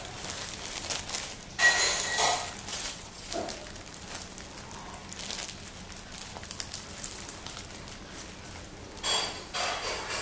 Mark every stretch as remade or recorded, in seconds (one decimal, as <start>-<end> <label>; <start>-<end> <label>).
0.0-2.7 recorded; 2.7-3.3 remade; 3.3-10.2 recorded